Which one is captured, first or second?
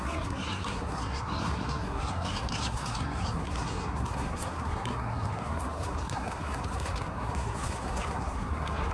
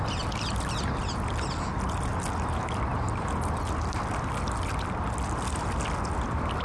second